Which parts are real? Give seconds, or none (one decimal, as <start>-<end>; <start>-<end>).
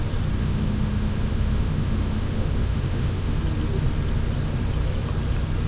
0.0-0.4; 3.4-5.7